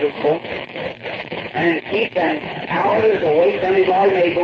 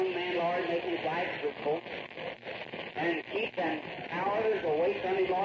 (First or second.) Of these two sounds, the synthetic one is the first